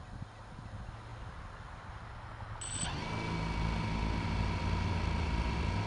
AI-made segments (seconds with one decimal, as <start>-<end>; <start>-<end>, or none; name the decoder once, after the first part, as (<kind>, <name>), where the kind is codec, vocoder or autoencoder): none